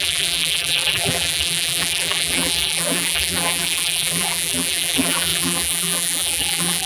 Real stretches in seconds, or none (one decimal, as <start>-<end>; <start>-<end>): none